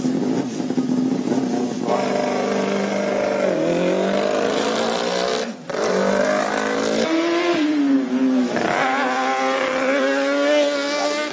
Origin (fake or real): real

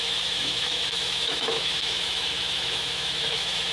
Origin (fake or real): fake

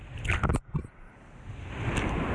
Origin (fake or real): real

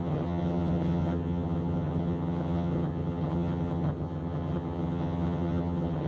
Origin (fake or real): fake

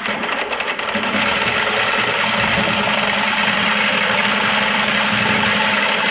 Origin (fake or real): real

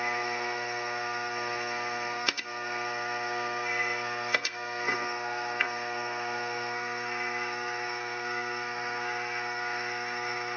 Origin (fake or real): fake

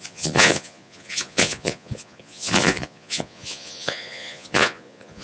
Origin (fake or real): fake